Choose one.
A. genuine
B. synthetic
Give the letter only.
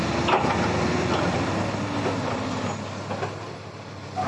A